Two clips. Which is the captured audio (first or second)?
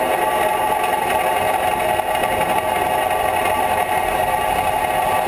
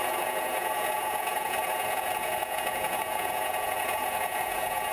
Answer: first